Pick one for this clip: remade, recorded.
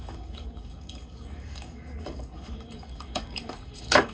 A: remade